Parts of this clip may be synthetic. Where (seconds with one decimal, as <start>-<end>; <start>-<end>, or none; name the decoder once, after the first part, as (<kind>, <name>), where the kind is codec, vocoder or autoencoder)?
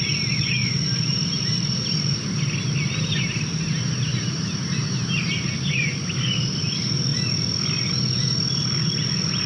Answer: 0.6-2.1 (vocoder, BigVGAN v2); 4.1-6.0